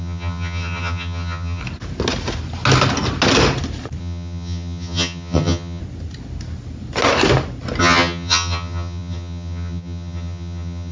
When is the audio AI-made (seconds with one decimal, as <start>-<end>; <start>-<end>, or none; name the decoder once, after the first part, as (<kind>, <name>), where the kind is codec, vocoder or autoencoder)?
0.0-1.6 (vocoder, HiFi-GAN); 4.0-5.8; 7.8-10.9